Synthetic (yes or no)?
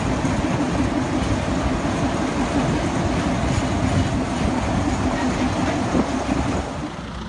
no